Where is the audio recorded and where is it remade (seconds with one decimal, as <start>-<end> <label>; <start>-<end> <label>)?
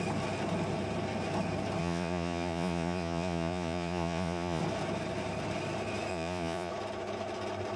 0.0-1.8 recorded; 1.8-4.6 remade; 4.6-6.1 recorded; 6.1-6.7 remade; 6.7-7.8 recorded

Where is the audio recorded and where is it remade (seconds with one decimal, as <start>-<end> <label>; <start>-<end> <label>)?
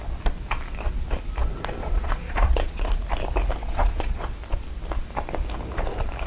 0.0-1.8 recorded; 1.8-3.0 remade; 3.0-3.6 recorded; 3.6-4.4 remade; 4.4-6.3 recorded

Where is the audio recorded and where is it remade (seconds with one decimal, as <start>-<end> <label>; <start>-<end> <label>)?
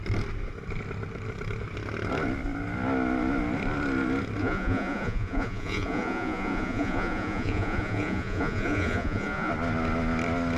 0.0-4.4 recorded; 4.4-9.5 remade; 9.5-10.6 recorded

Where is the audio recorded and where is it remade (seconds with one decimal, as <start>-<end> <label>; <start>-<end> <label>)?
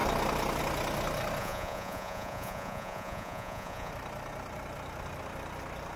0.0-1.4 recorded; 1.4-3.9 remade; 3.9-6.0 recorded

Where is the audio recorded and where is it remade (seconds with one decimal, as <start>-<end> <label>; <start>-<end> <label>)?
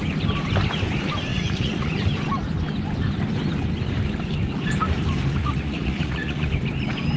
0.0-1.3 recorded; 1.3-1.9 remade; 1.9-5.4 recorded; 5.4-6.5 remade; 6.5-7.2 recorded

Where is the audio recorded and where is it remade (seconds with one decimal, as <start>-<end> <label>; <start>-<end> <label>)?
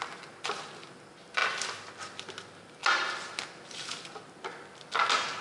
0.0-5.4 recorded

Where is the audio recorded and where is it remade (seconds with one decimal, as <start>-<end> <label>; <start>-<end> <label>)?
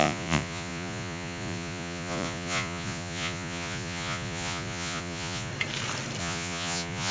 0.0-5.5 remade; 5.5-6.2 recorded; 6.2-7.1 remade